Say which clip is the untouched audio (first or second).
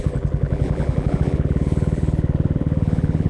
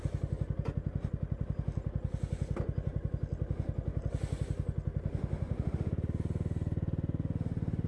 second